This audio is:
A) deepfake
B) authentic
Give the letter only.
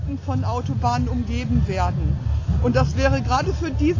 B